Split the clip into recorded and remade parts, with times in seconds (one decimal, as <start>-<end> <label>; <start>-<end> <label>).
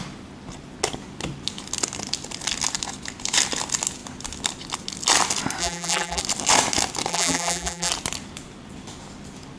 0.0-5.6 recorded; 5.6-6.2 remade; 6.2-7.1 recorded; 7.1-7.9 remade; 7.9-9.6 recorded